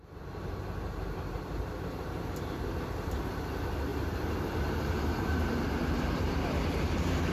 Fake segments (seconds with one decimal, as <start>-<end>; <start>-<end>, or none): 0.0-7.3